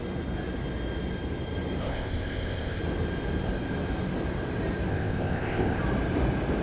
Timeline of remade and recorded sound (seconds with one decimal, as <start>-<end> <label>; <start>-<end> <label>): 0.0-1.8 recorded; 1.8-2.8 remade; 2.8-4.9 recorded; 4.9-5.8 remade; 5.8-6.6 recorded